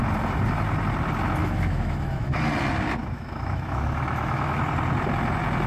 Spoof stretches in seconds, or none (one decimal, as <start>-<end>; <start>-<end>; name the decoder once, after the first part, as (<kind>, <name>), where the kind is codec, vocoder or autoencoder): 1.4-2.4 (autoencoder, DAC-VAE); 3.0-4.6